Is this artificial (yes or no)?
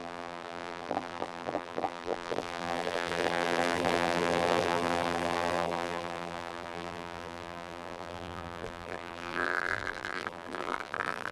yes